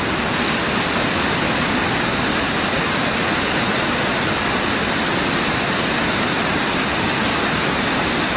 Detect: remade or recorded recorded